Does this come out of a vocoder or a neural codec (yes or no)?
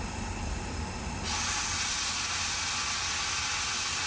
no